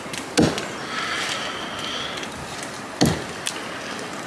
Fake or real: real